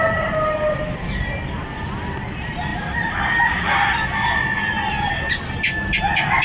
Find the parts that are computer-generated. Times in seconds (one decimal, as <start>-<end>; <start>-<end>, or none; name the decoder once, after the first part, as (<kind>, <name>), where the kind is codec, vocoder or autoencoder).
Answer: none